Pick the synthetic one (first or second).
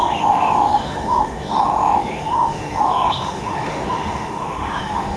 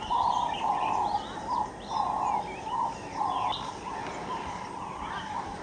first